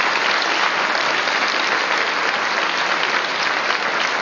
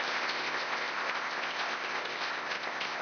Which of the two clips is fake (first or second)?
second